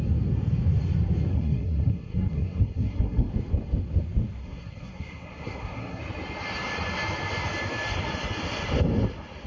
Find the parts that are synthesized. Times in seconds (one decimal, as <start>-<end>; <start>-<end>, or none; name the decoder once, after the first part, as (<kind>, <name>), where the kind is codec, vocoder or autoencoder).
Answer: 1.3-3.3 (codec, SNAC); 4.4-6.0